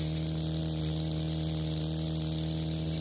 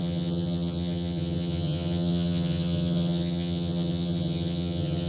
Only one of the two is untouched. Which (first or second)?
first